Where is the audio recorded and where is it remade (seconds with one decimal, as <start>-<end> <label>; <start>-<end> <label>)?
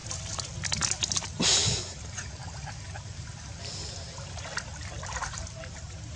0.0-1.1 recorded; 1.1-6.2 remade